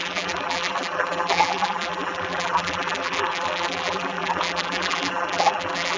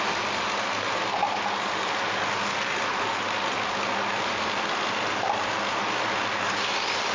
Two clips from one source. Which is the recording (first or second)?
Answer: second